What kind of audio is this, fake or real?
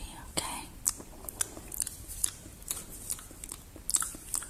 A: fake